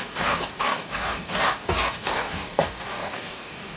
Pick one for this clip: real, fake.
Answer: fake